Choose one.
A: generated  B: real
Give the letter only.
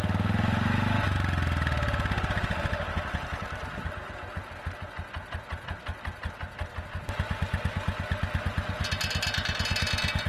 B